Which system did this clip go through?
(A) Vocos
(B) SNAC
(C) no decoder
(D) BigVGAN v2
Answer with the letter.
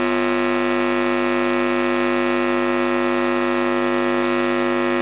C